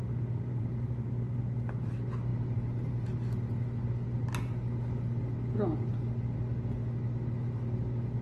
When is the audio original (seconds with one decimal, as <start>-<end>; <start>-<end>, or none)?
0.0-0.5; 1.4-8.2